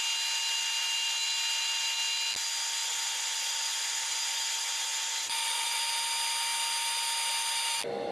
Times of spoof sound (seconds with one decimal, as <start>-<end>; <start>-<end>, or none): 2.8-5.8